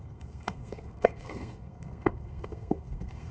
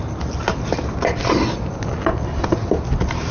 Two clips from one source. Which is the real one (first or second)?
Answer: second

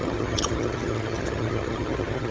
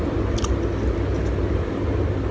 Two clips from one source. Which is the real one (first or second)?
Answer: second